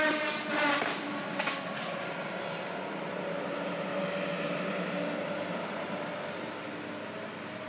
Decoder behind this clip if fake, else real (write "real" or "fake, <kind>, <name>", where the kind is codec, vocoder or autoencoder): real